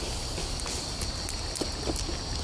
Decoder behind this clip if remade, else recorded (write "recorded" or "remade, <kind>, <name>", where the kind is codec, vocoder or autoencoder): recorded